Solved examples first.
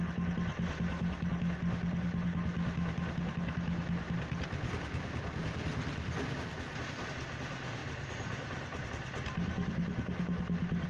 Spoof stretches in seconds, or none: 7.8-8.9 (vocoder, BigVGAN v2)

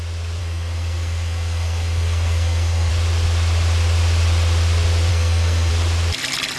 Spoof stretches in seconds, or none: 0.4-2.9 (codec, SNAC); 5.1-5.7

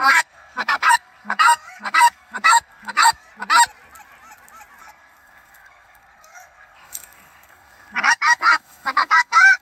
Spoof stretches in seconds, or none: 0.0-3.3 (codec, SNAC); 4.8-9.6